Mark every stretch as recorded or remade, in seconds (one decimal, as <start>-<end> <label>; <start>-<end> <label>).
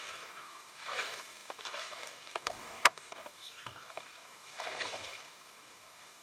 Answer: 0.0-6.2 remade